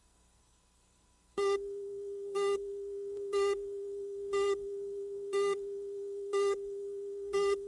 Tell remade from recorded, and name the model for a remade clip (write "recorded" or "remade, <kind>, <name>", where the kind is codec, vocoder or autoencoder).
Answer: remade, codec, SNAC